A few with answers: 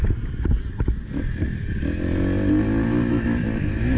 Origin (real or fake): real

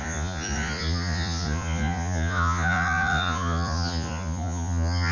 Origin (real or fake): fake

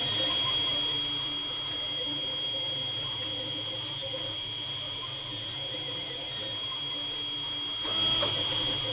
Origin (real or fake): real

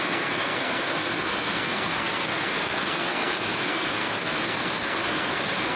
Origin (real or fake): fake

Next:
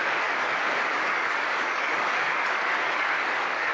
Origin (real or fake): fake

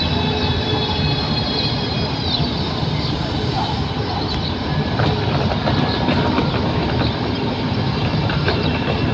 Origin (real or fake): fake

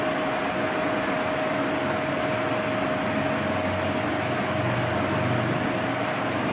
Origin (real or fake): real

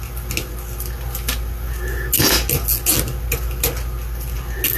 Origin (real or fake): real